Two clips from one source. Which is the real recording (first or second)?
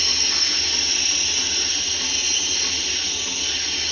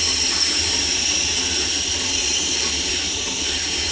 first